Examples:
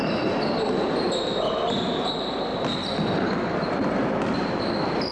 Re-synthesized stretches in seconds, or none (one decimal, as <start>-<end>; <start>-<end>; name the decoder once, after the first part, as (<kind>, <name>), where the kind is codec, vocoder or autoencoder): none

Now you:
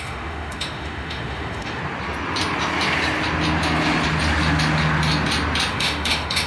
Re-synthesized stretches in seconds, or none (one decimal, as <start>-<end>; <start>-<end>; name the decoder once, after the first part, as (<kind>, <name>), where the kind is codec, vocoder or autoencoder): 0.0-1.8 (autoencoder, DAC-VAE); 5.7-6.5

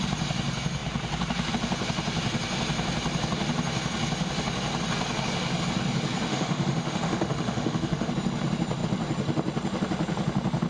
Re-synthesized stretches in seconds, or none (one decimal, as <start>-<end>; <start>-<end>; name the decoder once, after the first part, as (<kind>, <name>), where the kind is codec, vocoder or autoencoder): 6.3-8.1 (autoencoder, DAC-VAE)